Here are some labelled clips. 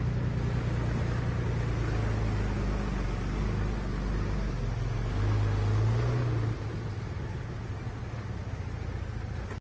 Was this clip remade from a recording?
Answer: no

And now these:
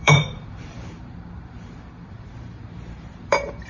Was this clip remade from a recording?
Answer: yes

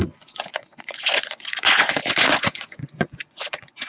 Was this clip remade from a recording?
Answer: yes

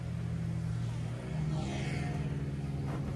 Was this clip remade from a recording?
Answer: no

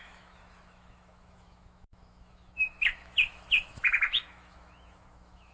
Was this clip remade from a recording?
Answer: yes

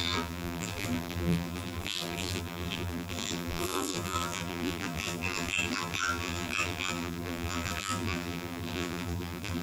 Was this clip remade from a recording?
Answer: yes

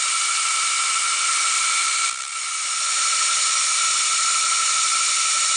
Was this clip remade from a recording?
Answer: yes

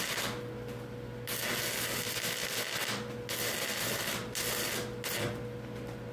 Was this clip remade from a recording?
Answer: no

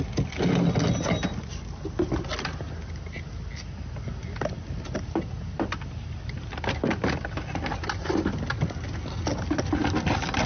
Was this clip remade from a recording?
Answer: no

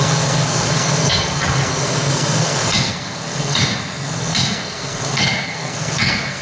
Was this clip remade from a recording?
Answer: yes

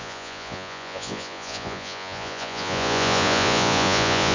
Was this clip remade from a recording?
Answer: yes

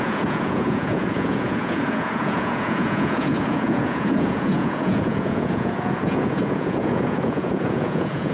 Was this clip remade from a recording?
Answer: yes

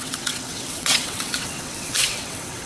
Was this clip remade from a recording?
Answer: yes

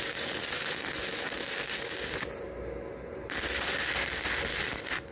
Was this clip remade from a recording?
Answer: no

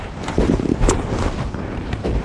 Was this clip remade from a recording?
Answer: yes